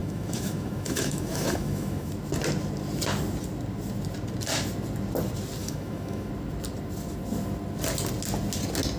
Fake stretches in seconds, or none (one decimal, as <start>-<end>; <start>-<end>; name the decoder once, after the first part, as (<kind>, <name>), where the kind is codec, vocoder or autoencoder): 0.0-2.1 (autoencoder, DAC-VAE); 5.6-6.3